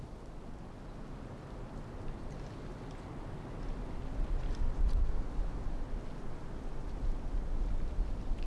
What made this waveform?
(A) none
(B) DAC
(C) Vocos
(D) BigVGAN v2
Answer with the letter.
A